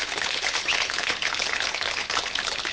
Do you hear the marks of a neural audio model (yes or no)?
yes